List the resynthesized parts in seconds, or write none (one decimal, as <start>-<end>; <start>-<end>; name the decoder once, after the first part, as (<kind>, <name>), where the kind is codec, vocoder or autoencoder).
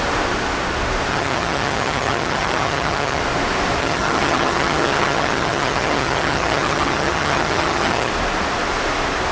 1.1-3.2 (vocoder, HiFi-GAN); 3.8-8.1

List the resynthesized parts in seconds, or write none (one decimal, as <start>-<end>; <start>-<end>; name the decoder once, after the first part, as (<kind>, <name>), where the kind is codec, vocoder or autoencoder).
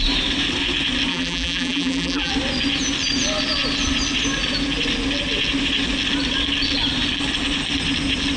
1.1-2.3 (vocoder, BigVGAN v2)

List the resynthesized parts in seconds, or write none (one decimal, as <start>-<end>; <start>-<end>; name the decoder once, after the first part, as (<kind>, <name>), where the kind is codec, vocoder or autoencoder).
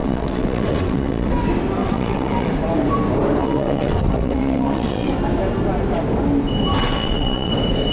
0.0-1.3 (vocoder, WaveNeXt); 1.8-2.5; 3.4-5.1; 6.8-7.5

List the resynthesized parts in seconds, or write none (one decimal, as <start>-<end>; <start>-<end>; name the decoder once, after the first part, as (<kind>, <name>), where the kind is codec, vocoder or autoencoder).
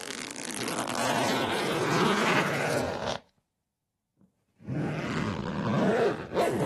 1.0-4.9 (vocoder, Vocos)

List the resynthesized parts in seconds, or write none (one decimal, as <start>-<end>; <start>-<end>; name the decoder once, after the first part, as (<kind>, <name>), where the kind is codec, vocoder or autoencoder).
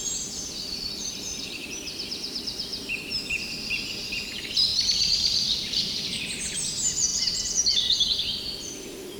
0.0-2.7 (vocoder, BigVGAN v2); 4.2-7.1; 7.8-9.2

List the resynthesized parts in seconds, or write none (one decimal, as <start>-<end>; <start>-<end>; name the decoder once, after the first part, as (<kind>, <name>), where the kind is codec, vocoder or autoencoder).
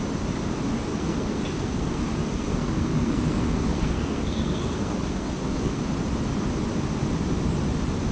0.9-5.8 (codec, SNAC)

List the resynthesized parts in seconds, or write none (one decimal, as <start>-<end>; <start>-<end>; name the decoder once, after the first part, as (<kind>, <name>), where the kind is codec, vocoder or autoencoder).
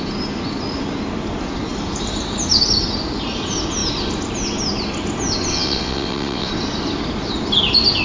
5.5-6.5 (vocoder, WaveNeXt)